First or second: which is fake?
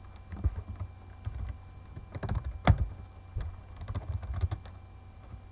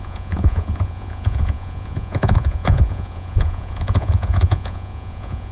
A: second